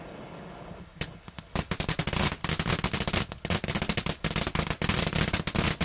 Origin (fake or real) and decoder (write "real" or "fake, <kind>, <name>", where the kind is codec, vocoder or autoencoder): real